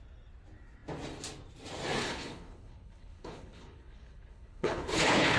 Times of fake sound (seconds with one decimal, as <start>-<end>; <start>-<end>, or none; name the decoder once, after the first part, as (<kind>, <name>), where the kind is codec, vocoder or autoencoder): 2.0-5.4 (codec, HILCodec)